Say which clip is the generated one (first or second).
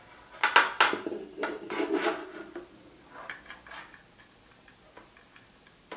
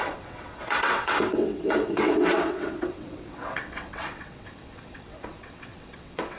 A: second